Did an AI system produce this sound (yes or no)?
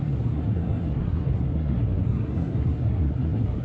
yes